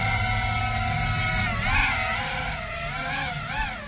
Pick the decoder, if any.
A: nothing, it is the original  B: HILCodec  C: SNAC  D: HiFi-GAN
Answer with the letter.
A